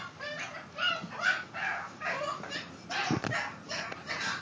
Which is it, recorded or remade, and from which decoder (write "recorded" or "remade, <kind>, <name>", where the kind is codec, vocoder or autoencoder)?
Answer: recorded